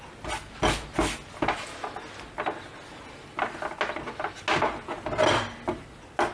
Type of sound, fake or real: real